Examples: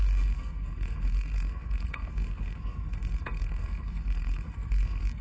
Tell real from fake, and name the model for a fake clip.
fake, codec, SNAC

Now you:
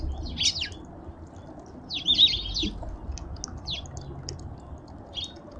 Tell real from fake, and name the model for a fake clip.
real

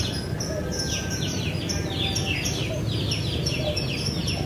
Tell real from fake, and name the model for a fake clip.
real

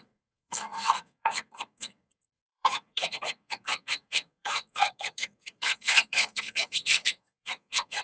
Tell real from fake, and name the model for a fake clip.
fake, codec, SNAC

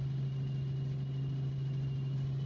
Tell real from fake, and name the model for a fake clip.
real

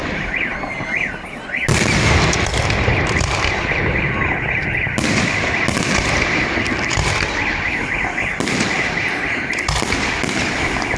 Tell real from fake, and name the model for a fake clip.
real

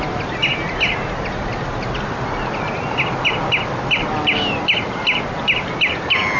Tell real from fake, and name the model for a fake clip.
real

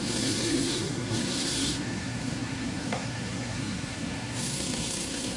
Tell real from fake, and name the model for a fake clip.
fake, codec, SNAC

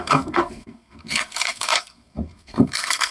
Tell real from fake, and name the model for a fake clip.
fake, codec, SNAC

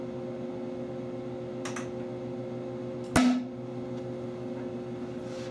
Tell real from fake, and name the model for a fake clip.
real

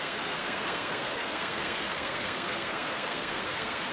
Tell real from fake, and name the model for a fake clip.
fake, codec, SNAC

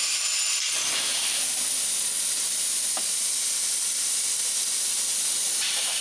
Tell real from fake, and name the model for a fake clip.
real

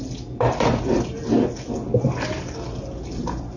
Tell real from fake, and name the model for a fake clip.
real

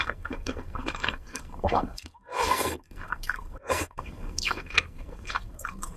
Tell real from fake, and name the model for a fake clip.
fake, codec, SNAC